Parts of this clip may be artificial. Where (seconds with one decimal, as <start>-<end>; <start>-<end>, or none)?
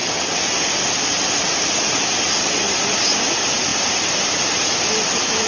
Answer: none